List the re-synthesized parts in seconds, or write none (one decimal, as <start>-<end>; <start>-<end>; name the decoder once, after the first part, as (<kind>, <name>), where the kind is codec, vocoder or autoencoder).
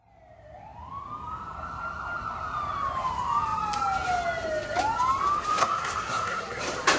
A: 5.6-6.6 (codec, SNAC)